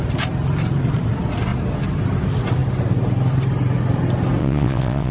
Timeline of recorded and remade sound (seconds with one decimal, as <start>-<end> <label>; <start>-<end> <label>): 0.0-4.4 recorded; 4.4-5.1 remade